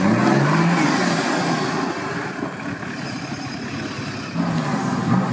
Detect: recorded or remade recorded